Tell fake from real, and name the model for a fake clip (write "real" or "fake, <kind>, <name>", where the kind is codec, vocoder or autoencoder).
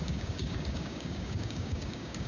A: fake, codec, DAC